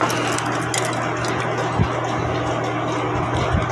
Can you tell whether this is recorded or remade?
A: recorded